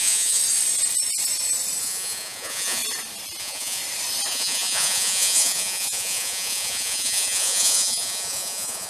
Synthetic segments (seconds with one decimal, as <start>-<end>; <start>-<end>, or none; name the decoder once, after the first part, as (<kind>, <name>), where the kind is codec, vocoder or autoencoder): 0.0-0.4 (vocoder, Vocos); 1.8-2.8; 3.4-3.8; 4.3-8.9